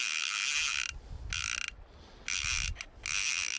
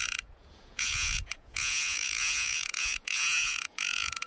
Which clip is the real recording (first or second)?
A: first